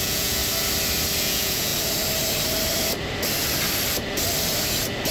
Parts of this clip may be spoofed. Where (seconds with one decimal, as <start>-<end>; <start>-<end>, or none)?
0.0-0.4; 1.2-1.7